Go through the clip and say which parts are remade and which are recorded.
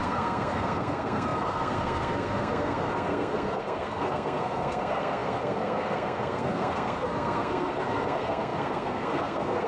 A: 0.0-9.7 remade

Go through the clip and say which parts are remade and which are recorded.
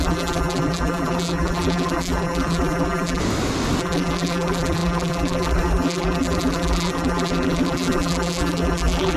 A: 0.0-3.2 remade; 3.2-3.8 recorded; 3.8-9.2 remade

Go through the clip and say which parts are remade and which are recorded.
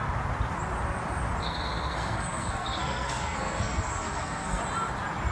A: 0.0-1.4 recorded; 1.4-4.6 remade; 4.6-5.3 recorded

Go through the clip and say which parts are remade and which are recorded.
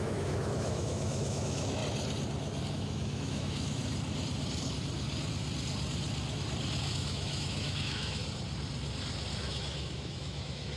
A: 0.0-1.8 remade; 1.8-2.7 recorded; 2.7-3.8 remade; 3.8-6.8 recorded; 6.8-8.2 remade; 8.2-9.4 recorded; 9.4-10.8 remade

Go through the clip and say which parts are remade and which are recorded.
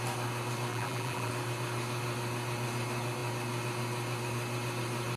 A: 0.0-0.7 recorded; 0.7-1.3 remade; 1.3-5.2 recorded